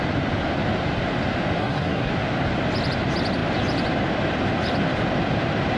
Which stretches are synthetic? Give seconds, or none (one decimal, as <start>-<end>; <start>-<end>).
1.6-2.1